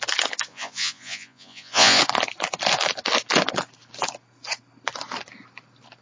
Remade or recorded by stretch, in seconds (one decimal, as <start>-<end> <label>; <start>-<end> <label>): 0.0-0.5 recorded; 0.5-2.0 remade; 2.0-6.0 recorded

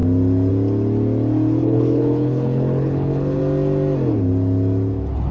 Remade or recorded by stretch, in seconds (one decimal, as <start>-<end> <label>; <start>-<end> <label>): 0.0-1.6 recorded; 1.6-3.4 remade; 3.4-5.3 recorded

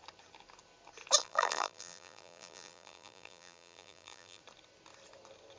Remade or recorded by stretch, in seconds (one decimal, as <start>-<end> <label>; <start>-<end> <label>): 0.0-1.2 recorded; 1.2-4.4 remade; 4.4-5.6 recorded

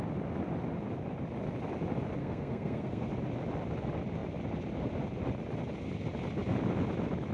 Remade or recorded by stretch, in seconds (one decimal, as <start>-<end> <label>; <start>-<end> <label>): 0.0-2.2 recorded; 2.2-3.1 remade; 3.1-7.3 recorded

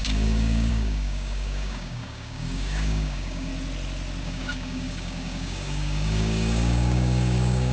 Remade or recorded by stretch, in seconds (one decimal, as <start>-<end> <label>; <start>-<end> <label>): 0.0-3.5 remade; 3.5-4.2 recorded; 4.2-7.7 remade

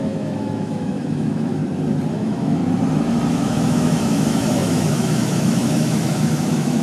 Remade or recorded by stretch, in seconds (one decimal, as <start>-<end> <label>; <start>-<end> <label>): 0.0-1.6 remade; 1.6-2.1 recorded; 2.1-2.6 remade; 2.6-3.3 recorded; 3.3-6.8 remade

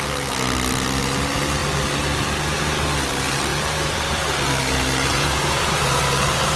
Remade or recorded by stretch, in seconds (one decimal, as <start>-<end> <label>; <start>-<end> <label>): 0.0-5.1 recorded; 5.1-6.0 remade; 6.0-6.6 recorded

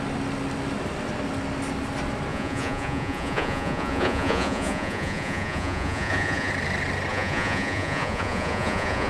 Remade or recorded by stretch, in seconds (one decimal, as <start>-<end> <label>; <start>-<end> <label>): 0.0-2.3 recorded; 2.3-6.5 remade; 6.5-7.1 recorded; 7.1-9.1 remade